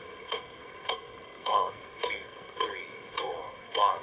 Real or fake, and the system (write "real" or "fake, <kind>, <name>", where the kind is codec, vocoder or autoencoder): fake, codec, SNAC